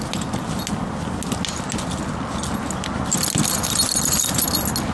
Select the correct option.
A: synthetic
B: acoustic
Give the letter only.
B